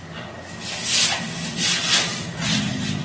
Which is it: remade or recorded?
recorded